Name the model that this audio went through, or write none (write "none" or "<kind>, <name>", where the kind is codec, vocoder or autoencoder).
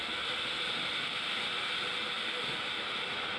none